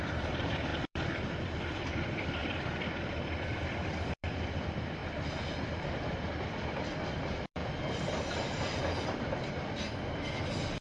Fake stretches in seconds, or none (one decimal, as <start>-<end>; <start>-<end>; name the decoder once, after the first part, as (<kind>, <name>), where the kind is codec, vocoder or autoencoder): 0.0-2.4 (vocoder, BigVGAN v2); 3.6-5.0; 5.9-7.6; 10.3-10.8